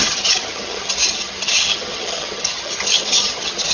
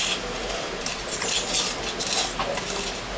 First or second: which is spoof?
first